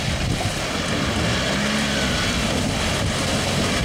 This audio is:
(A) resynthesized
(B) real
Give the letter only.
B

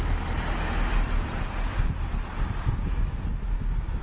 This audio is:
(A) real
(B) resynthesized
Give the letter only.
A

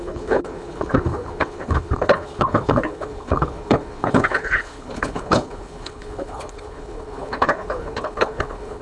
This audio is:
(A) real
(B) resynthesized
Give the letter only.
B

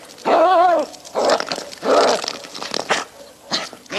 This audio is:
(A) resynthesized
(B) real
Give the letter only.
B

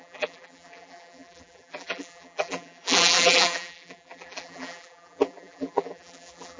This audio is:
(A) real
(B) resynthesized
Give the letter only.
B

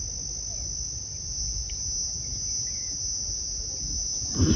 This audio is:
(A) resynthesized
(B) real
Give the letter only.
B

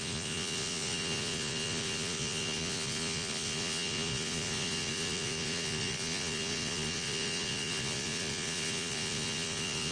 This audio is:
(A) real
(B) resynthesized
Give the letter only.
B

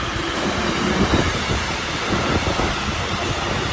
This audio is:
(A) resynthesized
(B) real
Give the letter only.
B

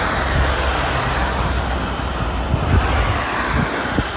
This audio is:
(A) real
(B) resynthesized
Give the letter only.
A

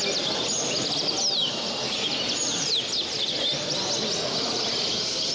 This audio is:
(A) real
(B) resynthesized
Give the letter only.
A